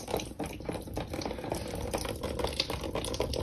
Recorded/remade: recorded